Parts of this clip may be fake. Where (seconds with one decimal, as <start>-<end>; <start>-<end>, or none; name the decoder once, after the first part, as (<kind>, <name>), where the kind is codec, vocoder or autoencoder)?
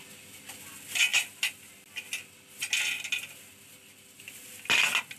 none